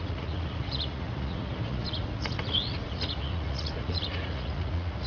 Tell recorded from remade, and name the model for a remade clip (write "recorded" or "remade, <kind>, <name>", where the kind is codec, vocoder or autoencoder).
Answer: remade, vocoder, Vocos